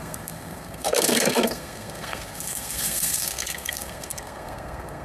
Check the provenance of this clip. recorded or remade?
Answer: remade